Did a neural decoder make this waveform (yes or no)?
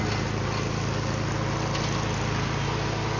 no